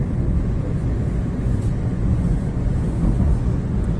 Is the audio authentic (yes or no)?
no